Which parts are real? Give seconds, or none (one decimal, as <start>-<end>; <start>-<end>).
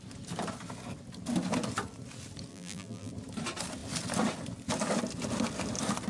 0.0-2.5; 3.1-6.1